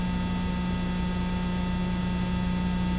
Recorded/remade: recorded